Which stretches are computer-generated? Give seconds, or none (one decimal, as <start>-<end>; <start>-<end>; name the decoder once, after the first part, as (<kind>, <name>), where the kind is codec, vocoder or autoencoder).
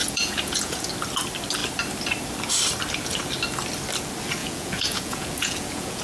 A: 0.0-0.9 (vocoder, Vocos); 4.4-6.0